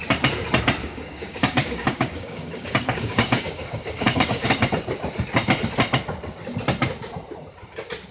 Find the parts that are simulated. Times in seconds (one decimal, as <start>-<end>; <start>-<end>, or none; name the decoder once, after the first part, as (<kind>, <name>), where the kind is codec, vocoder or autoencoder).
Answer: 0.8-4.6 (codec, DAC)